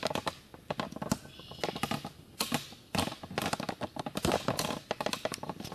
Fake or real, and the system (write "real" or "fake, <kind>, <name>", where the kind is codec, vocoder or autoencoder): real